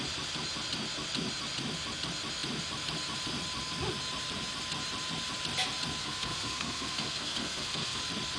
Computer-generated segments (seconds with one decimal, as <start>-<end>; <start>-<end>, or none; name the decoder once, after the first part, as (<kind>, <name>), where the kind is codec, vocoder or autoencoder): 6.0-8.0 (codec, SNAC)